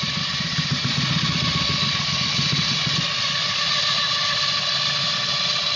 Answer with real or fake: real